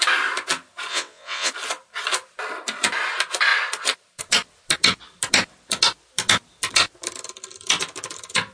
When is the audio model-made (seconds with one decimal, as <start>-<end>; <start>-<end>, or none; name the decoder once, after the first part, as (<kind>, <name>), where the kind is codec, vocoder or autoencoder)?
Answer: 0.9-1.5 (vocoder, WaveNeXt)